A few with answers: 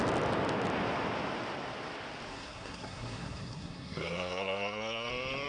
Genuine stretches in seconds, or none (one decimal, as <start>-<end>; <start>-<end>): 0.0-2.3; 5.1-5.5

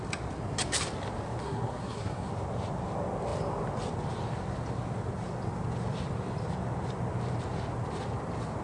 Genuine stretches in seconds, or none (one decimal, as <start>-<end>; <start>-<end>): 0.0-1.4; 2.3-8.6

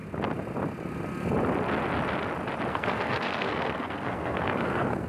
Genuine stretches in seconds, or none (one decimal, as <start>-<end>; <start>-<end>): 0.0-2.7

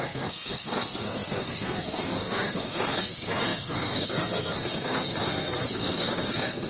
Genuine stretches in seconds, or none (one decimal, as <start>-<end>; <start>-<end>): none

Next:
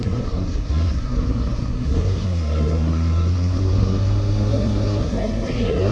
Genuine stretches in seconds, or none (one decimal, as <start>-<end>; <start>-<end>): none

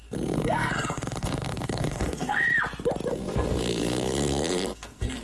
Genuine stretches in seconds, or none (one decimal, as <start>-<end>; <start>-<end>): 2.5-3.1

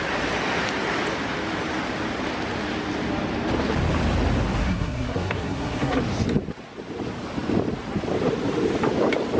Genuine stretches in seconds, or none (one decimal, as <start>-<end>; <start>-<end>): 0.0-4.6; 6.0-9.4

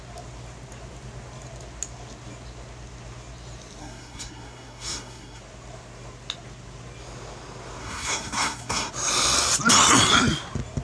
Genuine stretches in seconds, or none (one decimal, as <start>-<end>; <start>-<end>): 0.0-3.8; 5.4-7.8; 8.9-10.8